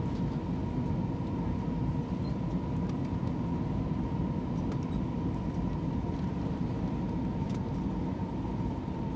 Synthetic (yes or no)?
no